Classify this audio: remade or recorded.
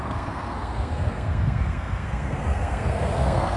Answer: remade